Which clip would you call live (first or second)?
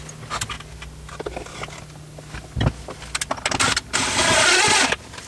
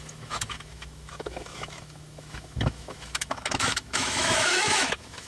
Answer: first